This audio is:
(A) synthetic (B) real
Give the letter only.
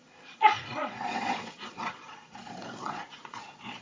A